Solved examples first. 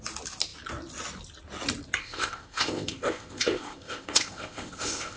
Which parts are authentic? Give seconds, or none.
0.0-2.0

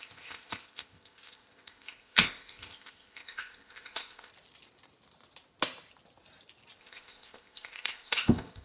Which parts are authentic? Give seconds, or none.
4.3-6.8

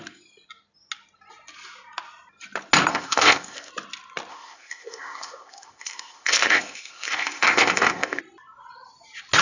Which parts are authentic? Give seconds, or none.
0.0-2.9; 3.7-4.3; 8.2-9.4

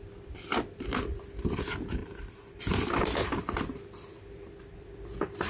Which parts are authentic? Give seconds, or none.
0.0-5.5

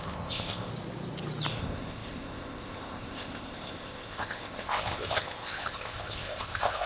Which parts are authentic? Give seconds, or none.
0.7-1.5

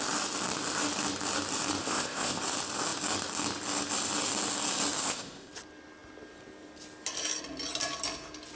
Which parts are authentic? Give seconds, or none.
0.0-1.8; 2.4-5.0; 5.5-8.6

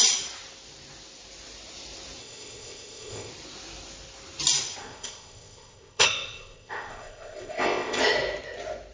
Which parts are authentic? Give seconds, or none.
0.0-2.2; 3.3-4.8; 8.0-8.9

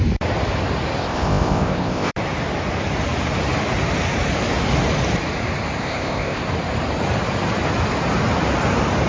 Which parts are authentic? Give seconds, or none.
0.0-1.0; 2.1-5.8; 6.4-9.1